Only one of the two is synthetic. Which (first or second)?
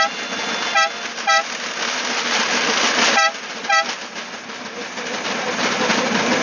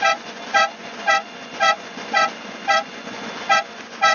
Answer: second